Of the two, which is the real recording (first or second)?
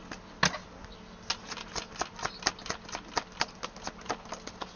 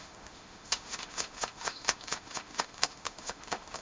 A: first